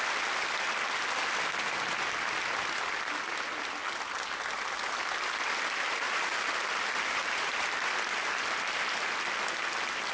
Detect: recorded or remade recorded